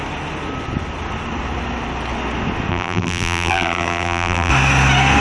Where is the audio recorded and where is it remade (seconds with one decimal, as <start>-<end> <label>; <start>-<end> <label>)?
0.0-2.7 recorded; 2.7-4.5 remade; 4.5-5.2 recorded